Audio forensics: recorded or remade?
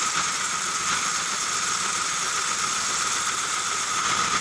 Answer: recorded